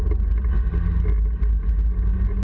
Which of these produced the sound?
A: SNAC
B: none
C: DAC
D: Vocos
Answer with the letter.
B